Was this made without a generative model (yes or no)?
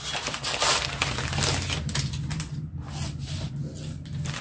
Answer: yes